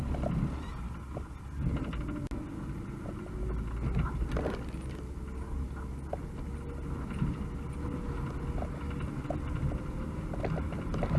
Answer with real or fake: real